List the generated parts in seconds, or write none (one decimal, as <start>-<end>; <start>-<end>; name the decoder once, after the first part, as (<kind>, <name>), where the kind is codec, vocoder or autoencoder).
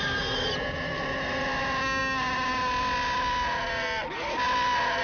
none